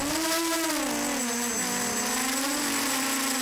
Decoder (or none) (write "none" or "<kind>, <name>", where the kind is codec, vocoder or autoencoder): none